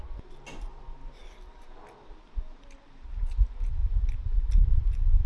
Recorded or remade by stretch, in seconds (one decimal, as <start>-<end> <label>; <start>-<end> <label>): 0.0-5.3 recorded